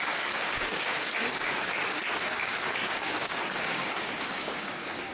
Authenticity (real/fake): fake